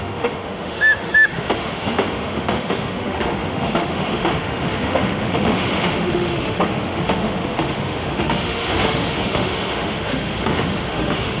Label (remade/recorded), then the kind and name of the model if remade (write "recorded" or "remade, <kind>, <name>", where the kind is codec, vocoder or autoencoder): remade, autoencoder, DAC-VAE